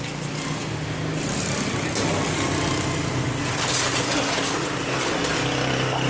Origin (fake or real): real